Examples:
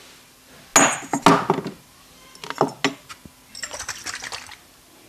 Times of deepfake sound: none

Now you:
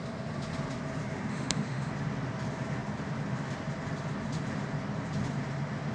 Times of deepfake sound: 1.3-1.9 (autoencoder, DAC-VAE)